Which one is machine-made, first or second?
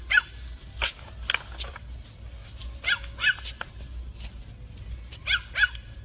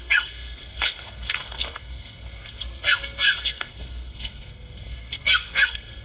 second